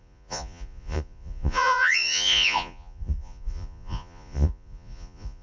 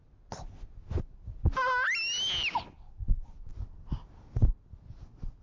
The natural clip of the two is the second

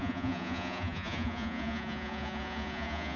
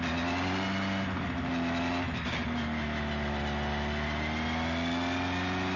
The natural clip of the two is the second